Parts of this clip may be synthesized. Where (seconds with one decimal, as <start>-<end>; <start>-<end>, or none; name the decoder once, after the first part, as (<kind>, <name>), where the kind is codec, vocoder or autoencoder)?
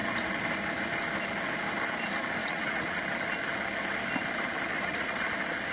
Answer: 2.4-3.0 (vocoder, Vocos); 4.7-5.3